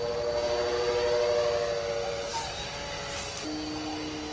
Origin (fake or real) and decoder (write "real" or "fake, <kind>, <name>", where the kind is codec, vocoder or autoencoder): real